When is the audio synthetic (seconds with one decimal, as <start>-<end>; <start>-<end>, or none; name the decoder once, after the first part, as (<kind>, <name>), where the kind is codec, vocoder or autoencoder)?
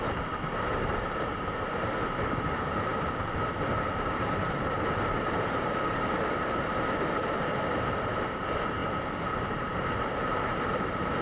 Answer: 0.0-8.8 (vocoder, BigVGAN v2); 9.5-11.2